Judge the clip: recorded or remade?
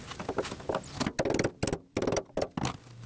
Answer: recorded